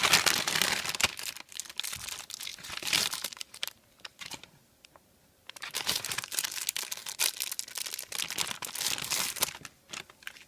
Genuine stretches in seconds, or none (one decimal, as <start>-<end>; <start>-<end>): 0.0-2.5; 6.6-10.5